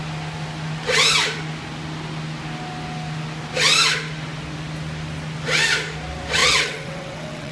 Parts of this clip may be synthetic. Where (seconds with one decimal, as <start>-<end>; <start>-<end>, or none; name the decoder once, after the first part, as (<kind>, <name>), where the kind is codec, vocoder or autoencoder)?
6.4-7.5 (vocoder, WaveNeXt)